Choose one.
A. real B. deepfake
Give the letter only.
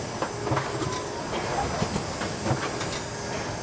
A